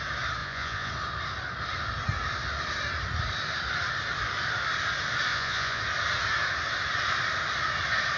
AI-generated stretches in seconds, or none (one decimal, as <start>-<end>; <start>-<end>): 0.4-0.9; 5.3-5.8